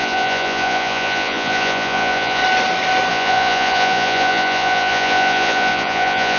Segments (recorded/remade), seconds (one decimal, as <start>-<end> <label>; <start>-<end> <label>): 0.0-2.4 remade; 2.4-3.1 recorded; 3.1-6.4 remade